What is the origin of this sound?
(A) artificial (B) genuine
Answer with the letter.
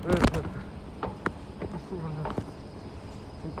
A